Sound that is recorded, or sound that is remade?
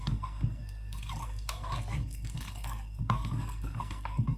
remade